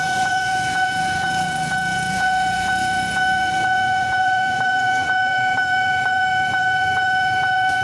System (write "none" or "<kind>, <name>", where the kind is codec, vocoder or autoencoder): vocoder, Vocos